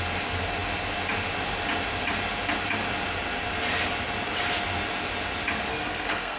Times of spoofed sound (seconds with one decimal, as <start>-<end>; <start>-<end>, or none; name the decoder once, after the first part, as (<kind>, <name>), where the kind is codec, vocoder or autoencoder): 5.7-6.4 (codec, SNAC)